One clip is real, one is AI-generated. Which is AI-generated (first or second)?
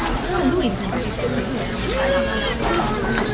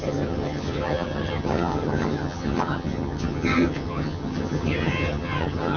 second